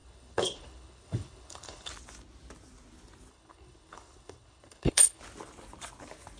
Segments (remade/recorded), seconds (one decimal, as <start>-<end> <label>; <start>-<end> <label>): 0.0-1.9 remade; 1.9-3.3 recorded; 3.3-5.2 remade; 5.2-6.4 recorded

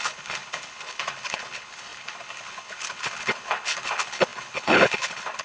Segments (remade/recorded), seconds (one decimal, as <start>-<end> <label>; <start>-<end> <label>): 0.0-5.4 remade

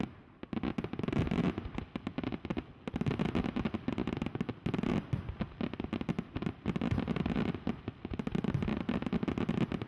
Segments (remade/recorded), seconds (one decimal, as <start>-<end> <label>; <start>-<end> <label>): 0.0-9.9 recorded

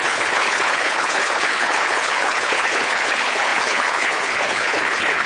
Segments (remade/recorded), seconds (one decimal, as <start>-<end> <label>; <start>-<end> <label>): 0.0-5.3 remade